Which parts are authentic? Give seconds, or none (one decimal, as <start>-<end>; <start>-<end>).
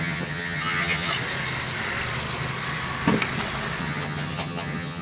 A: 1.1-3.8